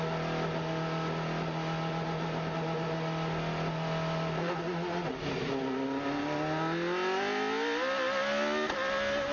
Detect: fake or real real